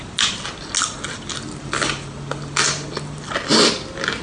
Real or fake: real